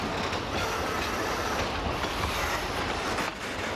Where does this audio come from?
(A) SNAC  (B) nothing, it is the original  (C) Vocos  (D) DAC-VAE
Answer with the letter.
B